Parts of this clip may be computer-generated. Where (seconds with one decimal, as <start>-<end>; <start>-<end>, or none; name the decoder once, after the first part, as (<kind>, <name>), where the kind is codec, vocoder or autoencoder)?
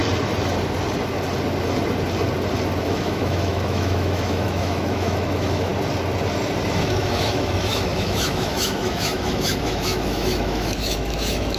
2.8-5.7 (autoencoder, DAC-VAE); 6.7-11.6